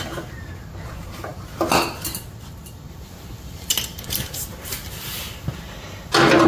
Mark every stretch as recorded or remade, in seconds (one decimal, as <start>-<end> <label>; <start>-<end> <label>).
0.0-6.5 recorded

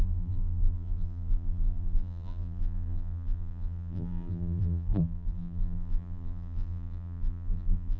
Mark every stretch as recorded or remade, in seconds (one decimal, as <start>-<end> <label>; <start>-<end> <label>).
0.0-8.0 remade

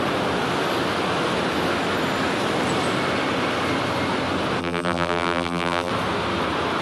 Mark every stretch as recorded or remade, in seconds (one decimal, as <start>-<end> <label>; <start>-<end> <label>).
0.0-4.6 recorded; 4.6-5.9 remade; 5.9-6.8 recorded

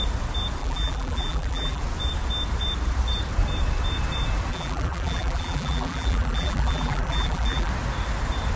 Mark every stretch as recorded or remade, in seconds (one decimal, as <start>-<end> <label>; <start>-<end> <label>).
0.0-0.6 recorded; 0.6-1.8 remade; 1.8-4.5 recorded; 4.5-7.7 remade; 7.7-8.6 recorded